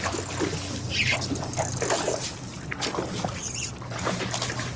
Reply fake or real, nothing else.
real